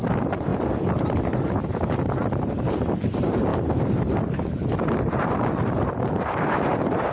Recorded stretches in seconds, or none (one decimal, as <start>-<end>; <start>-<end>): 0.5-1.2; 3.5-4.1